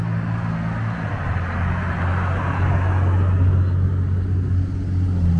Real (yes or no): yes